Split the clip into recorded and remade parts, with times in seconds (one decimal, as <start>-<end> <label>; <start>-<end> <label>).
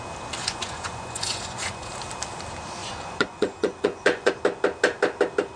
0.0-0.4 recorded; 0.4-1.9 remade; 1.9-2.8 recorded; 2.8-4.3 remade; 4.3-5.6 recorded